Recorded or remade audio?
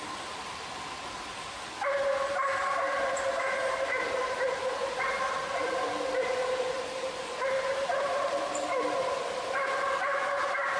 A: recorded